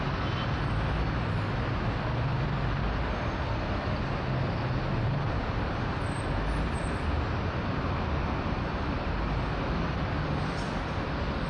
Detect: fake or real real